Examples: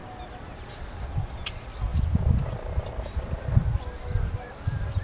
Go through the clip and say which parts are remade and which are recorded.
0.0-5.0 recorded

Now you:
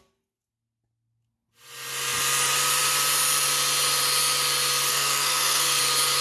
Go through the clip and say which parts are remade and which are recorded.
0.0-4.9 recorded; 4.9-5.8 remade; 5.8-6.2 recorded

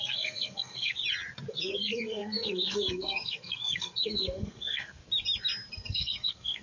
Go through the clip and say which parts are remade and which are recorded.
0.0-1.0 remade; 1.0-1.5 recorded; 1.5-5.0 remade; 5.0-5.7 recorded; 5.7-6.6 remade

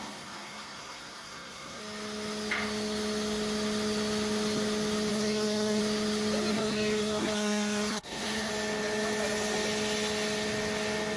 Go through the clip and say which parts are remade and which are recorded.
0.0-1.8 remade; 1.8-5.1 recorded; 5.1-5.8 remade; 5.8-6.5 recorded; 6.5-8.5 remade; 8.5-11.2 recorded

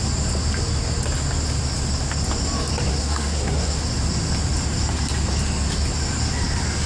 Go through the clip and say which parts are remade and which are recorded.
0.0-2.9 recorded; 2.9-3.8 remade; 3.8-6.9 recorded